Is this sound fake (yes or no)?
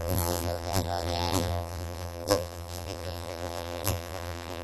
yes